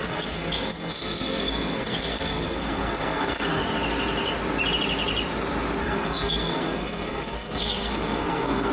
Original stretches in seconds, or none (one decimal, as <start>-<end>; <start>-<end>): 3.6-5.8